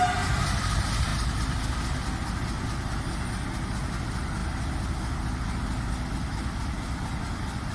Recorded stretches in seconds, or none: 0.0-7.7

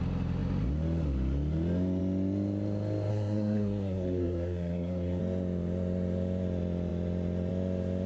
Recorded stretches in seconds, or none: 0.0-3.1; 5.2-8.1

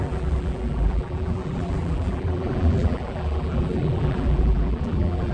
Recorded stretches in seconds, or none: none